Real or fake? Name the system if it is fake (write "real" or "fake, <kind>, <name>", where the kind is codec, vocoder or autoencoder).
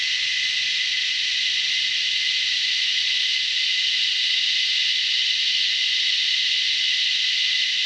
real